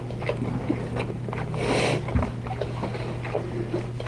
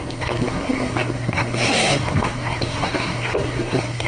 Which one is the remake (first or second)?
second